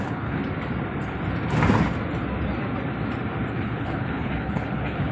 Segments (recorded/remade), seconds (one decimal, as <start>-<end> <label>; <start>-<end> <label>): 0.0-0.4 remade; 0.4-3.5 recorded; 3.5-5.1 remade